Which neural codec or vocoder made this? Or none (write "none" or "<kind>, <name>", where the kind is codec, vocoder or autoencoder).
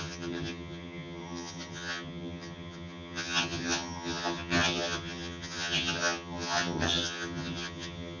vocoder, HiFi-GAN